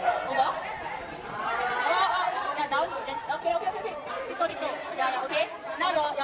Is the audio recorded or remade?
recorded